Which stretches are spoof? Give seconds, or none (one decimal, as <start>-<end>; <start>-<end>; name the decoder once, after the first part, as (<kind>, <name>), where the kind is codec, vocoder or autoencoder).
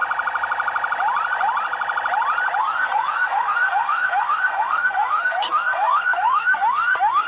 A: 2.6-7.3 (codec, SNAC)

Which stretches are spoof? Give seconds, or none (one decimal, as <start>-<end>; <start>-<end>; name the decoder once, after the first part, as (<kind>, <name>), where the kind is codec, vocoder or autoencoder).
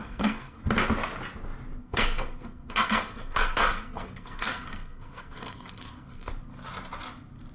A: 0.0-0.6 (codec, SNAC); 1.8-6.3